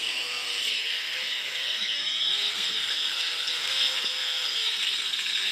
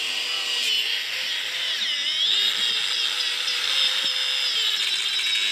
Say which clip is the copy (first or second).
first